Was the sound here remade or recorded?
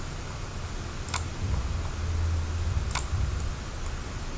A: recorded